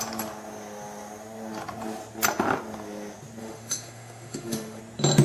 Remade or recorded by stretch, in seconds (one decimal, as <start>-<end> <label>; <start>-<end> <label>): 0.0-3.4 recorded; 3.4-4.8 remade; 4.8-5.2 recorded

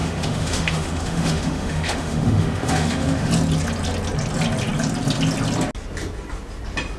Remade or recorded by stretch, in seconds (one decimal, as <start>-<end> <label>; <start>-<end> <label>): 0.0-3.3 remade; 3.3-7.0 recorded

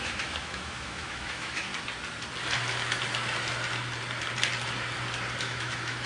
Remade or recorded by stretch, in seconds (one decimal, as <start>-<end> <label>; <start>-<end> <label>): 0.0-1.7 remade; 1.7-5.4 recorded; 5.4-6.1 remade

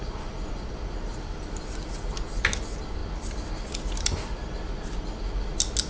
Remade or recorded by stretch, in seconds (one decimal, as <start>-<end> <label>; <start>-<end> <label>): 0.0-5.9 recorded

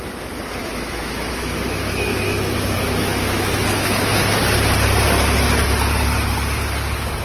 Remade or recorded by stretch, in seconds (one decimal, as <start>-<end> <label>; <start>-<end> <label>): 0.0-0.6 recorded; 0.6-4.4 remade; 4.4-7.2 recorded